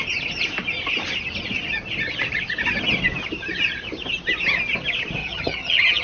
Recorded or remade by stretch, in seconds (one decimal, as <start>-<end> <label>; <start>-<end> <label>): 0.0-5.2 recorded; 5.2-6.0 remade